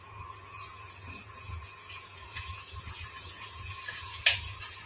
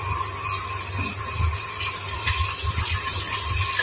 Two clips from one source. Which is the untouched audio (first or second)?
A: second